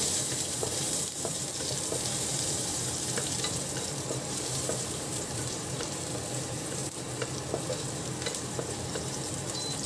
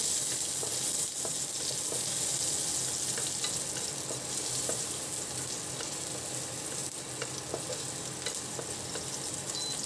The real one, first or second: second